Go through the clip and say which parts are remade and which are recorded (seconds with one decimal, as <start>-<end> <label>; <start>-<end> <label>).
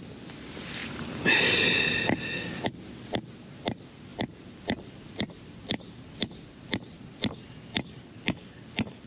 0.0-0.8 recorded; 0.8-1.6 remade; 1.6-4.1 recorded; 4.1-5.6 remade; 5.6-9.1 recorded